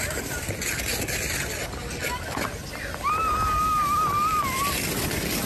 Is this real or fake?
real